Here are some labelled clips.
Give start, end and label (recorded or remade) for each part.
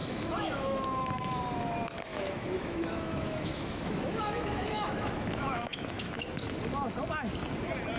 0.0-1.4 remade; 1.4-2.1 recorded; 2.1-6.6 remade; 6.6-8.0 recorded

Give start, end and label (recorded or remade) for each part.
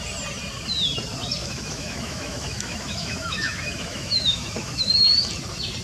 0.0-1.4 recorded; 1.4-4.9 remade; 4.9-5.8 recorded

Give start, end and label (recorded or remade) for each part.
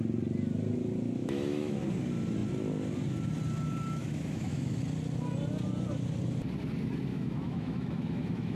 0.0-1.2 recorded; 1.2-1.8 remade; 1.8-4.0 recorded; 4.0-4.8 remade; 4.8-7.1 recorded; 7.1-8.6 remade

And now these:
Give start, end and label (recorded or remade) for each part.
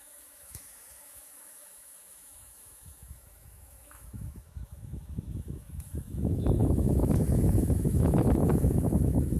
0.0-9.4 remade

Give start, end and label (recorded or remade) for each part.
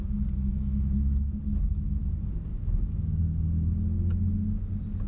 0.0-0.5 recorded; 0.5-1.4 remade; 1.4-2.5 recorded; 2.5-3.2 remade; 3.2-5.1 recorded